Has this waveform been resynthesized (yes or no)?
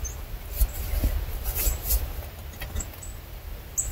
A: no